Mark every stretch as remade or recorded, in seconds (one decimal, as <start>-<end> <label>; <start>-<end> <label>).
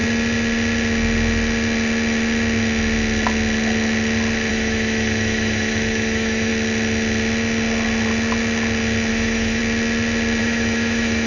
0.0-4.5 recorded; 4.5-6.5 remade; 6.5-9.1 recorded; 9.1-9.6 remade; 9.6-10.4 recorded; 10.4-11.3 remade